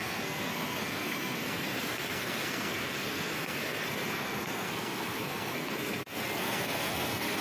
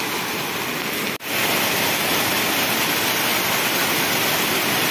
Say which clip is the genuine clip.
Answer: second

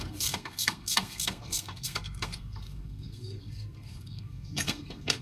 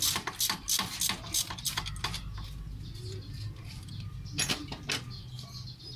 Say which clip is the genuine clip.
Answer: second